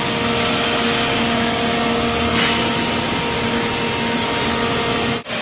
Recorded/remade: recorded